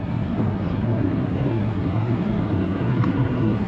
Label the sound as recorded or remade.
remade